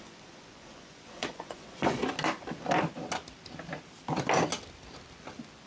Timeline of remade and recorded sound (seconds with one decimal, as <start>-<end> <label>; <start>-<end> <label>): 0.0-2.0 remade; 2.0-5.7 recorded

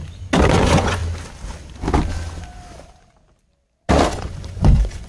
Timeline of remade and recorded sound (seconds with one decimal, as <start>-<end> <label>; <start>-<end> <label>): 0.0-0.5 recorded; 0.5-1.0 remade; 1.0-4.1 recorded; 4.1-5.1 remade

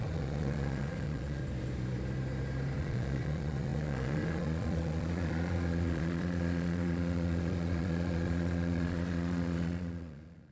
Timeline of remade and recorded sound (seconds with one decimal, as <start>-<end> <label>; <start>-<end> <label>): 0.0-1.4 remade; 1.4-2.8 recorded; 2.8-10.5 remade

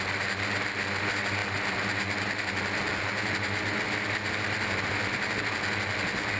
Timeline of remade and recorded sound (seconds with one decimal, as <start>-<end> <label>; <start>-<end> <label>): 0.0-6.4 recorded

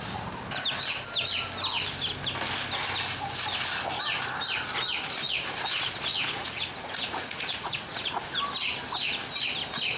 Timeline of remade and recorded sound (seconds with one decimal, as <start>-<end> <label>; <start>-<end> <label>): 0.0-6.1 recorded; 6.1-8.3 remade; 8.3-10.0 recorded